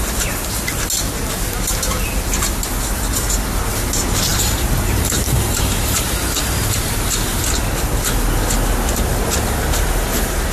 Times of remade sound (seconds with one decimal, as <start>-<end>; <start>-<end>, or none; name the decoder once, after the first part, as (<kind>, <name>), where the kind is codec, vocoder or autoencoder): 4.3-7.4 (vocoder, BigVGAN v2)